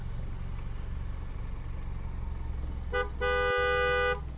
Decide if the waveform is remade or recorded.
recorded